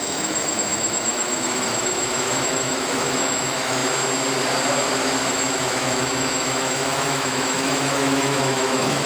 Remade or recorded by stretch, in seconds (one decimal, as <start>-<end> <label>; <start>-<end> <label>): 0.0-3.8 remade; 3.8-5.3 recorded; 5.3-9.1 remade